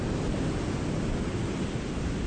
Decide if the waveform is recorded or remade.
recorded